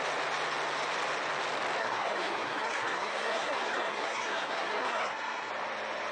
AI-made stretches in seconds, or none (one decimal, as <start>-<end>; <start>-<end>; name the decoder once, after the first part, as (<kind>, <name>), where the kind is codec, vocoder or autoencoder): 1.8-5.5 (codec, SNAC)